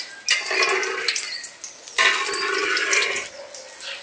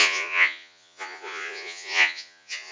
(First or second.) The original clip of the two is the first